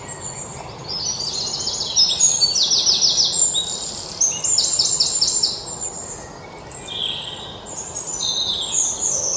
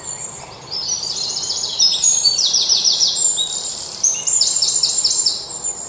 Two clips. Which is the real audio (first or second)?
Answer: first